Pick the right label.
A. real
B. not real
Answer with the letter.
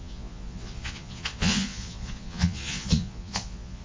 B